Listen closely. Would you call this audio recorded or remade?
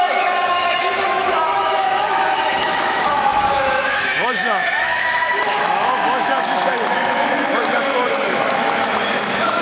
remade